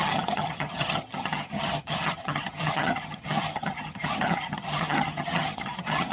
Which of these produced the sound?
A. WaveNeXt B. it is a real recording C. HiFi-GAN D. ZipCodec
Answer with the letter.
C